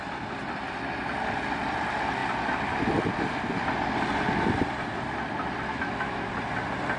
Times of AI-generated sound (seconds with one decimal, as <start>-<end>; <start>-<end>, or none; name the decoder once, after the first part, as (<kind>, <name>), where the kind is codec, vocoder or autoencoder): 5.7-6.3 (autoencoder, DAC-VAE)

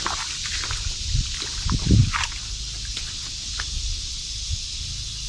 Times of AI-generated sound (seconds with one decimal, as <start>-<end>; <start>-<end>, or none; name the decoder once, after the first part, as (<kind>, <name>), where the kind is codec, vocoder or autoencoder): none

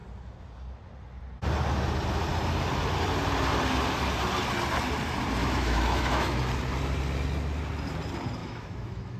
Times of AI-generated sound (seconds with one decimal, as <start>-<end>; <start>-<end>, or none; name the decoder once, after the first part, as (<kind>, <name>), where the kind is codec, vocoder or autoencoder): 5.4-6.4 (autoencoder, DAC-VAE); 8.4-9.2